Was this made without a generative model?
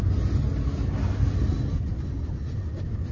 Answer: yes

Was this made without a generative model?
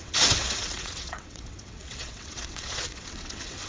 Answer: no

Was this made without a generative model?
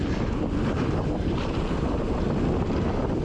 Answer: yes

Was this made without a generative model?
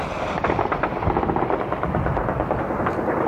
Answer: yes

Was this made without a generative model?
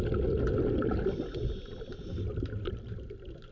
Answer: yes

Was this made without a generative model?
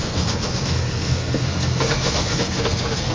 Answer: no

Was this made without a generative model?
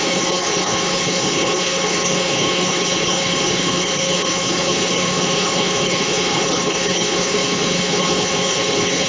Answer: no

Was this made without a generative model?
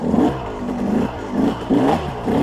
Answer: no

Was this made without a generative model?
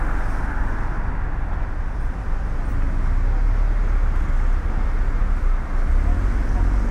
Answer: yes